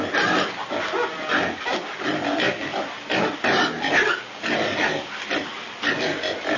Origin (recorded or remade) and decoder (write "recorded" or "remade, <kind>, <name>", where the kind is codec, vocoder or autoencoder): recorded